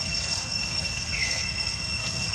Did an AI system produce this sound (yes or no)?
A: yes